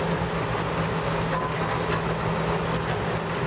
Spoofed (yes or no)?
no